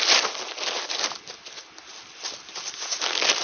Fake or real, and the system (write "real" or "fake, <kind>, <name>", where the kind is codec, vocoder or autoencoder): real